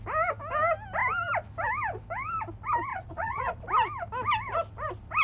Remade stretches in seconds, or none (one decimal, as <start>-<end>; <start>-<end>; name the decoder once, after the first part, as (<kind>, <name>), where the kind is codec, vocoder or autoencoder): 2.9-3.6 (vocoder, Vocos)